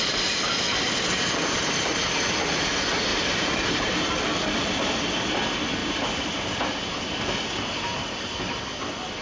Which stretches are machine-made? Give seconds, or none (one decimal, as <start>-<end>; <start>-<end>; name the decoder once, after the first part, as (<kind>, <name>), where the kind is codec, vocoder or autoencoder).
3.1-4.0 (vocoder, BigVGAN v2); 5.8-7.2